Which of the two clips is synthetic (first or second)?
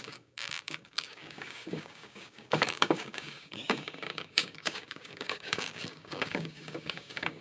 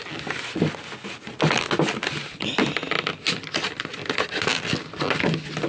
first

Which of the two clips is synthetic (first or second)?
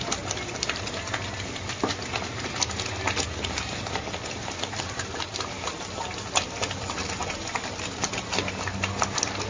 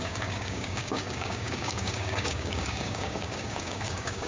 second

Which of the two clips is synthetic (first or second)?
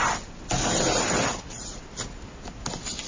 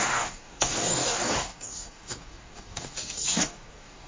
second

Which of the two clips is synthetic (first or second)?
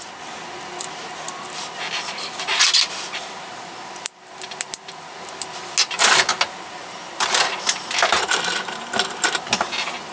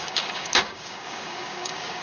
second